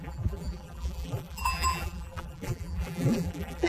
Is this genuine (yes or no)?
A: no